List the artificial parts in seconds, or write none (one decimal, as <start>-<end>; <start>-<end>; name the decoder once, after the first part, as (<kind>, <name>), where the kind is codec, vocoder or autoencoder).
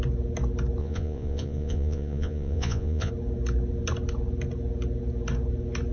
0.8-3.1 (vocoder, Vocos)